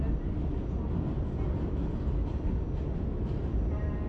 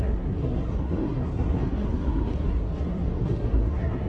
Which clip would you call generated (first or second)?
second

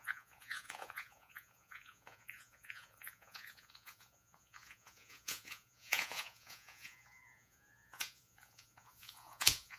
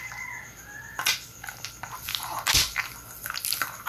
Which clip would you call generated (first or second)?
first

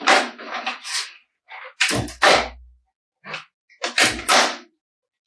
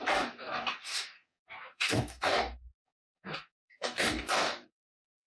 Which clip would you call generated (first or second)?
second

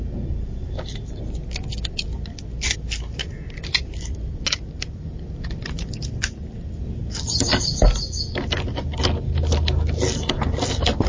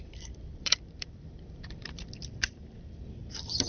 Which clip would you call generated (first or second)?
second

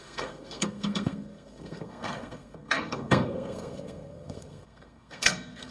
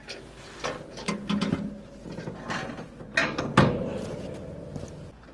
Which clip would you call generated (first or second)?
first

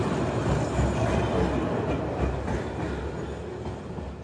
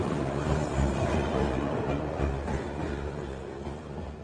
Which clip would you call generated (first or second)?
second